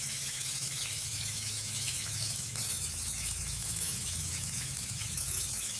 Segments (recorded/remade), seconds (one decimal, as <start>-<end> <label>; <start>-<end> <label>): 0.0-5.8 remade